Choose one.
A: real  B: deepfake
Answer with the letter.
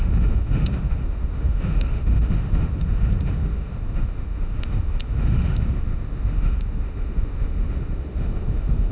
B